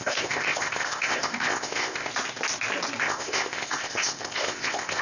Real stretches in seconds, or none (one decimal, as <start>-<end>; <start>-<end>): 2.1-3.0